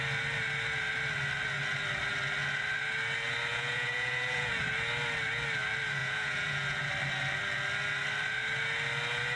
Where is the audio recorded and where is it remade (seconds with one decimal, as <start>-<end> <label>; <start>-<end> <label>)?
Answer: 0.0-3.5 recorded; 3.5-4.5 remade; 4.5-6.0 recorded; 6.0-6.9 remade; 6.9-9.4 recorded

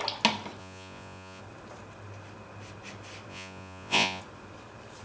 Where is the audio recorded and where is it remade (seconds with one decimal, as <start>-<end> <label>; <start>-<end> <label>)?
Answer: 0.0-0.6 recorded; 0.6-1.4 remade; 1.4-3.3 recorded; 3.3-4.2 remade; 4.2-5.0 recorded

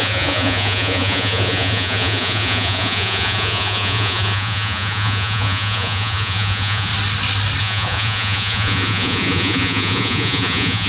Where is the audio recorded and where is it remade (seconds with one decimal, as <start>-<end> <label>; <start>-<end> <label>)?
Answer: 0.0-6.9 remade; 6.9-7.6 recorded; 7.6-10.9 remade

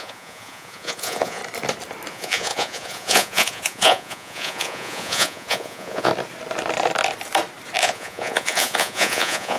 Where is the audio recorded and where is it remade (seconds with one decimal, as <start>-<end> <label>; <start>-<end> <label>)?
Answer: 0.0-1.4 remade; 1.4-2.1 recorded; 2.1-6.1 remade; 6.1-7.8 recorded; 7.8-9.6 remade

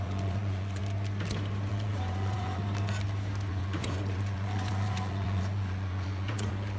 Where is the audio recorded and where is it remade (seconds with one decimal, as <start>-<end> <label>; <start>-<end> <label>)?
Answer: 0.0-0.8 remade; 0.8-1.7 recorded; 1.7-2.6 remade; 2.6-3.5 recorded; 3.5-6.8 remade

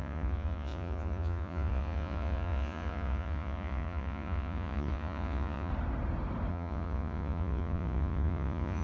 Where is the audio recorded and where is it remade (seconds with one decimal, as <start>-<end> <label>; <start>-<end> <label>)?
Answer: 0.0-5.7 remade; 5.7-6.5 recorded; 6.5-8.8 remade

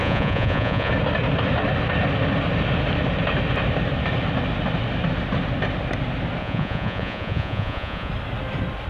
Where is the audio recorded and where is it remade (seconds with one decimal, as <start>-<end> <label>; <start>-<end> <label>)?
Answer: 0.0-0.9 remade; 0.9-6.4 recorded; 6.4-8.1 remade; 8.1-8.9 recorded